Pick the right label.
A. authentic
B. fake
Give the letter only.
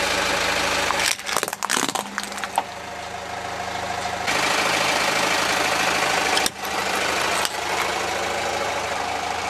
A